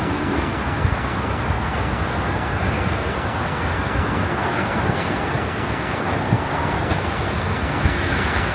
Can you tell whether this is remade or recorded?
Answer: remade